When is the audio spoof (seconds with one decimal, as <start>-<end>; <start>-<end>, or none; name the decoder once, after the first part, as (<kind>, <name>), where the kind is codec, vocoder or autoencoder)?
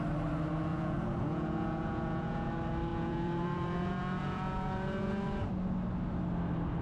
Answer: 0.7-2.5 (vocoder, Vocos); 2.9-5.4